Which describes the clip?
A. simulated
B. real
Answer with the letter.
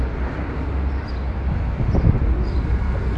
B